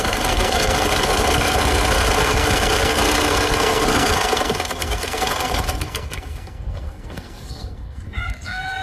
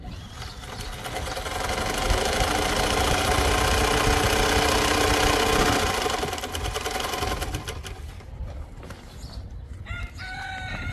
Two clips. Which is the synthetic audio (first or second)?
first